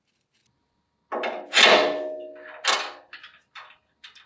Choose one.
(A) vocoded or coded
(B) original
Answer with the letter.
B